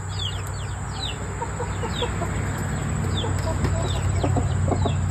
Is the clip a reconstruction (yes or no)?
no